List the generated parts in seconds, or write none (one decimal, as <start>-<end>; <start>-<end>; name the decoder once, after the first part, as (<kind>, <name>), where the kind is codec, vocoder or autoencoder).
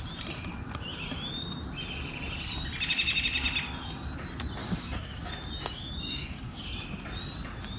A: 4.6-5.3 (codec, DAC); 5.7-6.7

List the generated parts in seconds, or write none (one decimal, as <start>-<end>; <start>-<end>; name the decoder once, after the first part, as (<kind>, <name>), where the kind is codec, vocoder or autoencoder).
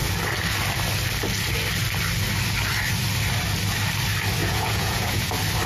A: 4.4-5.3 (vocoder, Vocos)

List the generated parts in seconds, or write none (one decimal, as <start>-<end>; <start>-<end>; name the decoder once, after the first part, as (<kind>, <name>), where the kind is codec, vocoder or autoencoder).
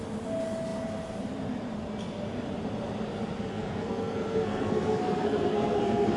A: 3.5-6.2 (codec, SNAC)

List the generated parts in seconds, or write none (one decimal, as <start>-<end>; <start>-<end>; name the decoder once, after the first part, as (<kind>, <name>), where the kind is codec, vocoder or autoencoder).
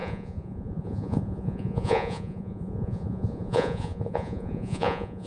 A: 0.0-5.3 (vocoder, Vocos)